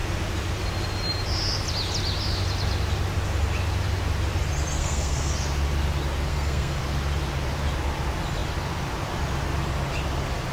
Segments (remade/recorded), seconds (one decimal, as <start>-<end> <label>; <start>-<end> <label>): 0.0-4.8 recorded; 4.8-5.3 remade; 5.3-6.3 recorded; 6.3-6.8 remade; 6.8-10.5 recorded